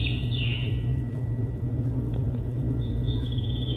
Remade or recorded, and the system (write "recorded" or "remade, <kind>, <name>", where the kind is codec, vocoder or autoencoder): remade, vocoder, Vocos